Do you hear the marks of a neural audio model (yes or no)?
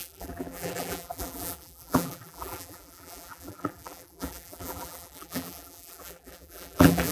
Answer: yes